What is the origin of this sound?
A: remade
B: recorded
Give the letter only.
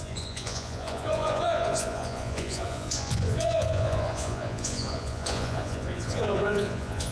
A